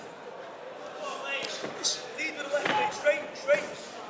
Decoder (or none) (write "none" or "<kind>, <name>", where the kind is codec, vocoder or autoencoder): none